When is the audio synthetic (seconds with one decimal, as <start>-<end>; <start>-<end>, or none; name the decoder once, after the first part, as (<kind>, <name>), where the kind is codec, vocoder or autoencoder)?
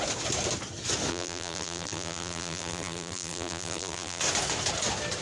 1.1-4.2 (vocoder, BigVGAN v2)